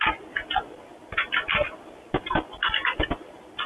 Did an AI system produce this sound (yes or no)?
no